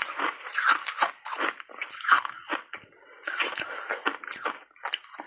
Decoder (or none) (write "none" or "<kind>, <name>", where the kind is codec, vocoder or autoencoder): none